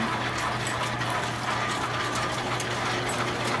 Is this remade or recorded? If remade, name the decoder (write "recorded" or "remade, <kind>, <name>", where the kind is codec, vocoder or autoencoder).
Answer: recorded